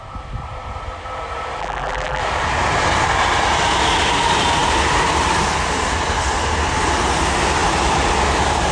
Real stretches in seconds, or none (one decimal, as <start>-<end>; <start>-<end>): 0.0-1.6; 2.2-8.7